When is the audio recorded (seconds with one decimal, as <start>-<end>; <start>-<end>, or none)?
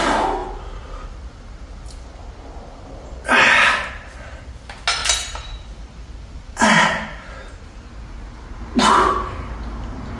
0.0-5.0; 6.7-10.2